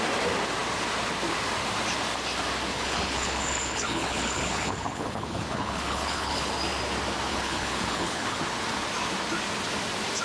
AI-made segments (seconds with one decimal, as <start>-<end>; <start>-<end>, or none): 2.7-6.5; 7.3-8.4